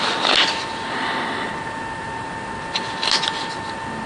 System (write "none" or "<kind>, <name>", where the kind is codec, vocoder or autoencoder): none